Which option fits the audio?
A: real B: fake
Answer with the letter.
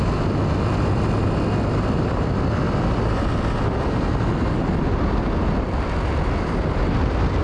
A